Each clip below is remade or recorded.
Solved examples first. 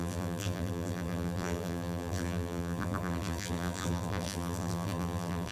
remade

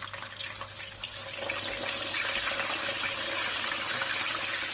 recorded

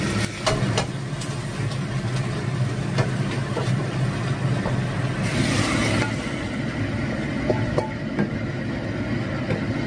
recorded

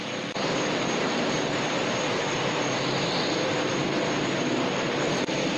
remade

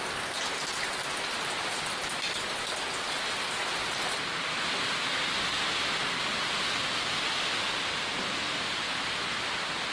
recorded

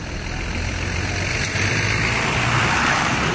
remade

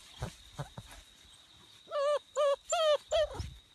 recorded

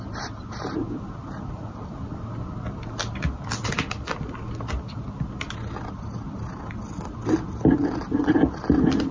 recorded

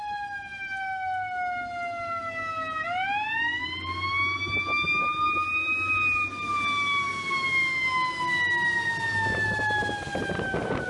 recorded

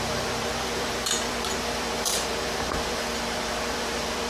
remade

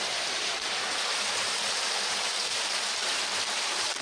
remade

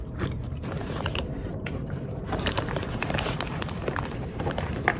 remade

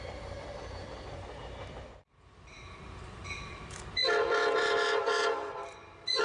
remade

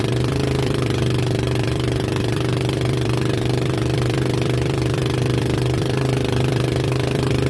remade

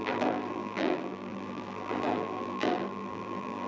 remade